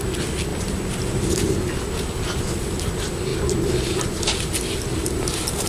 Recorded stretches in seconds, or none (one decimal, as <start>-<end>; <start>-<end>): 0.0-0.5; 1.5-5.0